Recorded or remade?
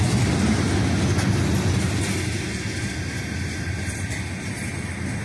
recorded